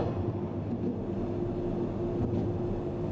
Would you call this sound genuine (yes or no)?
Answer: yes